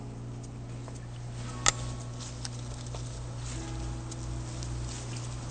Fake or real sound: real